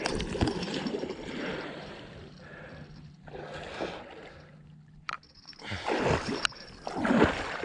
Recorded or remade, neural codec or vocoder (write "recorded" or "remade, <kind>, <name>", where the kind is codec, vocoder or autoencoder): recorded